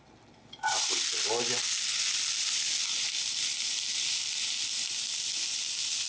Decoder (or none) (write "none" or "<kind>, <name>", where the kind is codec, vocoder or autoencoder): none